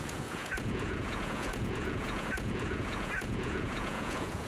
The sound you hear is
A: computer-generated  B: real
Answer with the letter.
A